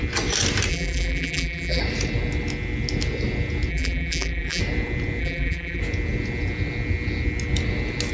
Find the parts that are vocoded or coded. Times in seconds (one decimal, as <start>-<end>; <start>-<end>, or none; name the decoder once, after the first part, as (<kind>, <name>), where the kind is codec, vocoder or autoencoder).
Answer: 0.7-1.8 (vocoder, BigVGAN v2); 3.7-4.6; 5.2-5.8